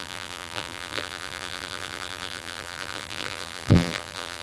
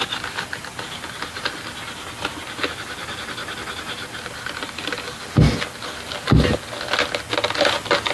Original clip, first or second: second